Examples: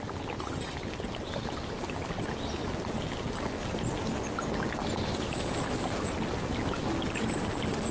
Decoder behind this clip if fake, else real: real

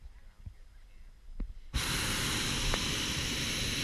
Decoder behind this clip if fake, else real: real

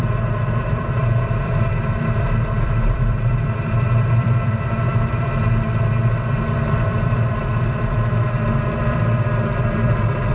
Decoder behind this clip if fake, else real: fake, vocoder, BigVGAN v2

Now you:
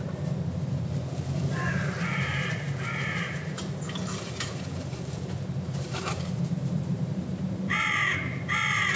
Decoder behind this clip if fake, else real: fake, vocoder, BigVGAN v2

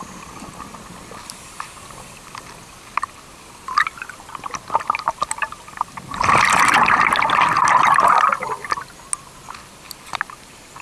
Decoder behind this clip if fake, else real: real